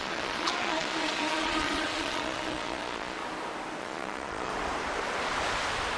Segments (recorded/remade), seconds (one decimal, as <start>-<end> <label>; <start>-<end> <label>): 0.0-3.2 remade; 3.2-3.8 recorded; 3.8-4.5 remade; 4.5-6.0 recorded